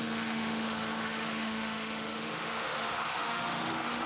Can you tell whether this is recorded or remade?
remade